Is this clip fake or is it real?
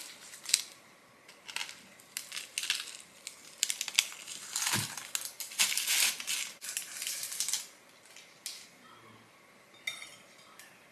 real